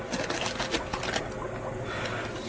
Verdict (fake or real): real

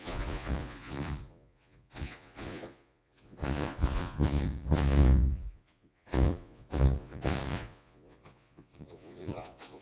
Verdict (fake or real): fake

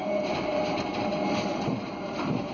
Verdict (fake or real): fake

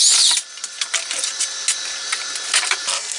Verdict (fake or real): real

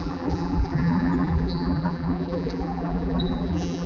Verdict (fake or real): fake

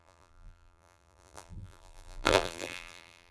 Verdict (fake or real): fake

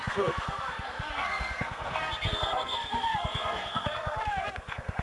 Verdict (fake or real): fake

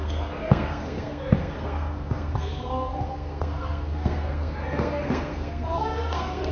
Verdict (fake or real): fake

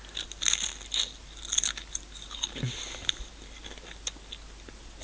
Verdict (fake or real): real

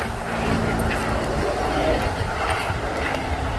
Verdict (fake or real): real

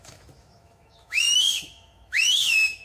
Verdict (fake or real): fake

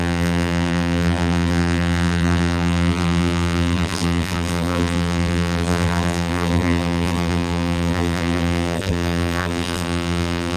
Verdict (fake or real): fake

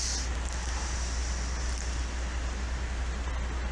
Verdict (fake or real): real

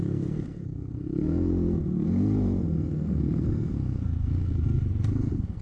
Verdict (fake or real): fake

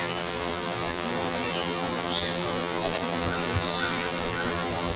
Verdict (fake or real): fake